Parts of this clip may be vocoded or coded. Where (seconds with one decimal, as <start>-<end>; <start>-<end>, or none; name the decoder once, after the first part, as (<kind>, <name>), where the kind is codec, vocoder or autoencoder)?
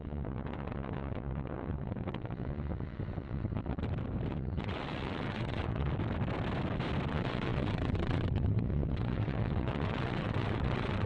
0.0-3.8 (vocoder, WaveNeXt); 4.3-5.9; 7.1-11.1